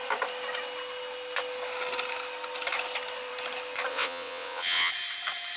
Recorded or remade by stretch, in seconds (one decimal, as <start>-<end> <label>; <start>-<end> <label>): 0.0-3.9 recorded; 3.9-4.9 remade; 4.9-5.6 recorded